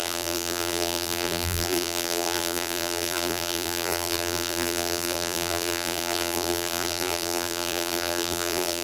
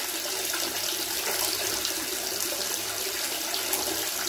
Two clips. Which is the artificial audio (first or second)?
first